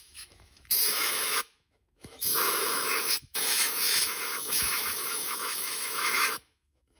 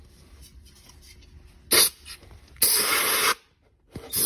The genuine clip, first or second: second